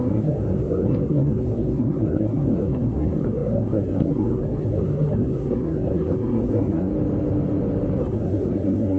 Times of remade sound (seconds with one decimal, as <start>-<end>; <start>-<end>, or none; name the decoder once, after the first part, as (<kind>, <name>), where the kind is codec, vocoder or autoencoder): 0.0-6.9 (codec, SNAC); 8.0-9.0